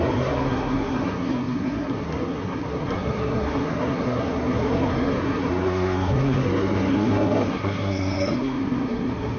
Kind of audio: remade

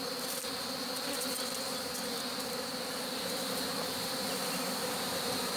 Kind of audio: recorded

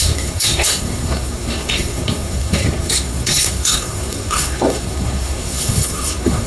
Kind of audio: remade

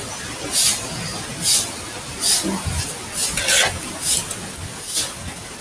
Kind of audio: recorded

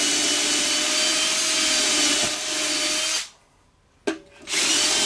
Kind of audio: recorded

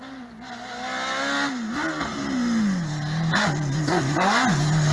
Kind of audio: recorded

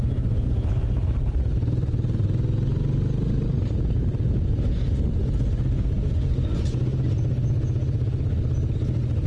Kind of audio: recorded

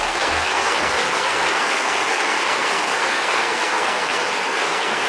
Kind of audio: remade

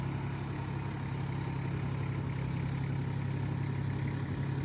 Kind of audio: recorded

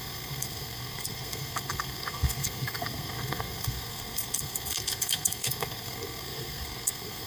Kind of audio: remade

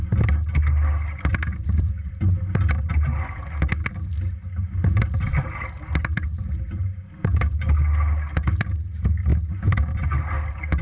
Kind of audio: recorded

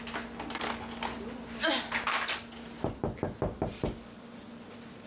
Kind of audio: recorded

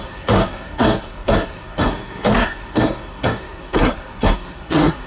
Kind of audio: remade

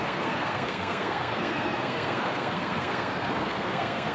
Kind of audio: remade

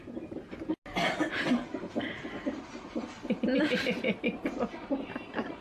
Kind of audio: recorded